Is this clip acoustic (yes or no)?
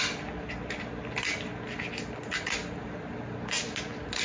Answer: yes